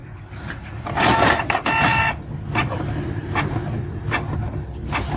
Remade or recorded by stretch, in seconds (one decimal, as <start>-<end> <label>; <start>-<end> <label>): 0.0-0.8 remade; 0.8-1.9 recorded; 1.9-3.5 remade; 3.5-5.2 recorded

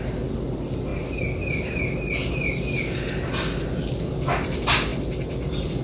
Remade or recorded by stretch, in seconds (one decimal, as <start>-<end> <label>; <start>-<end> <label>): 0.0-5.8 recorded

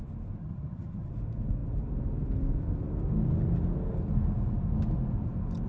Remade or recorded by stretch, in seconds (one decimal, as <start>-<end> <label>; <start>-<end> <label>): 0.0-0.4 recorded; 0.4-1.1 remade; 1.1-5.7 recorded

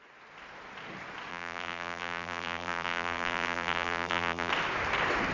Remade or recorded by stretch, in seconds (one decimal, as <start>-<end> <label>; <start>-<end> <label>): 0.0-1.3 recorded; 1.3-4.5 remade; 4.5-5.3 recorded

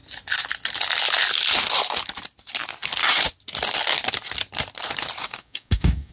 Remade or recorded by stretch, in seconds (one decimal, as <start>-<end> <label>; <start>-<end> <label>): 0.0-5.2 recorded; 5.2-6.1 remade

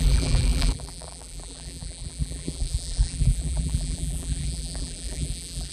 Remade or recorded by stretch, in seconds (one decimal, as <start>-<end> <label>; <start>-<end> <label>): 0.0-5.7 remade

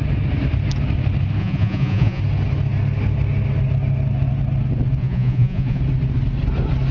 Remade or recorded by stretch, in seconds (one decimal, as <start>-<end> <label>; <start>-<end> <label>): 0.0-1.4 recorded; 1.4-2.2 remade; 2.2-5.0 recorded; 5.0-5.8 remade; 5.8-6.9 recorded

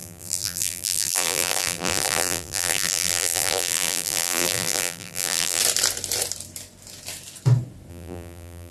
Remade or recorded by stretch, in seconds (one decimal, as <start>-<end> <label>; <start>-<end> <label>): 0.0-5.6 remade; 5.6-7.9 recorded; 7.9-8.7 remade